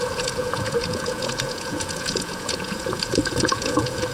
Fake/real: fake